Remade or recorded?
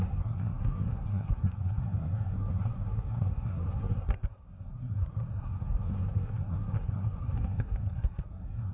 remade